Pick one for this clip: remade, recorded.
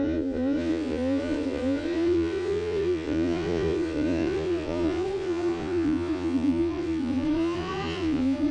remade